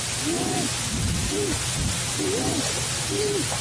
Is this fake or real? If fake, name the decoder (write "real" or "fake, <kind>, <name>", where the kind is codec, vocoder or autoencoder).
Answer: real